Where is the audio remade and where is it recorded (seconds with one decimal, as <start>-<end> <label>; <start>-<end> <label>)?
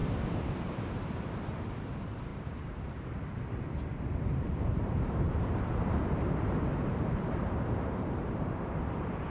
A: 0.0-1.6 remade; 1.6-2.3 recorded; 2.3-2.8 remade; 2.8-4.1 recorded; 4.1-9.3 remade